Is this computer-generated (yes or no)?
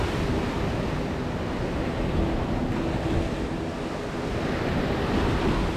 no